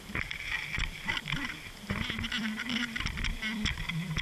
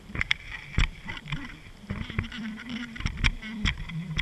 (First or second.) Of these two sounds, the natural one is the first